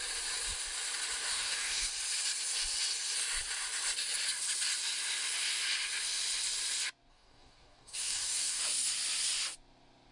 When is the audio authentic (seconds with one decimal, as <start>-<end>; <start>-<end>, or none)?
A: 0.0-1.3; 1.9-7.1; 8.6-10.1